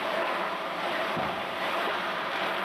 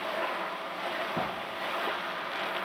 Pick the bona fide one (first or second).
second